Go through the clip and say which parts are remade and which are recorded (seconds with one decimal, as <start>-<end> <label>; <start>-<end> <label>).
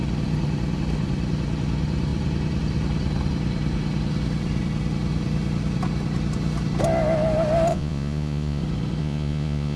0.0-7.7 recorded; 7.7-8.6 remade; 8.6-9.0 recorded; 9.0-9.8 remade